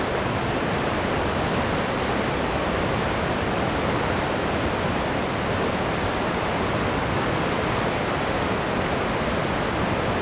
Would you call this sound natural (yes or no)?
yes